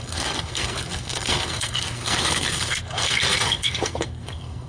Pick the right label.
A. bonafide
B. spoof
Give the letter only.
B